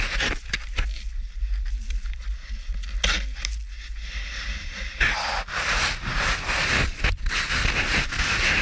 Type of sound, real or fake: real